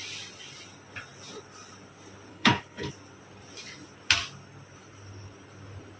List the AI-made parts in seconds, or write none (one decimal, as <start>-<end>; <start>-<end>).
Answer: 2.3-2.9